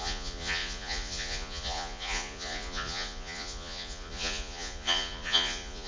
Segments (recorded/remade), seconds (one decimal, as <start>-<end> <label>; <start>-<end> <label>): 0.0-5.9 remade